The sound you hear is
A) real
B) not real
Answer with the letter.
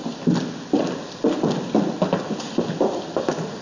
A